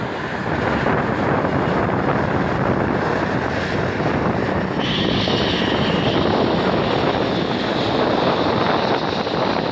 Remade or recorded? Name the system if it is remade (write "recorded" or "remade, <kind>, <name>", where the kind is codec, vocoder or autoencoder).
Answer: recorded